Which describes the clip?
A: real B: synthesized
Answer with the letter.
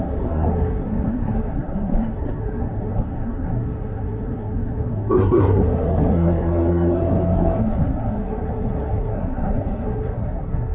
B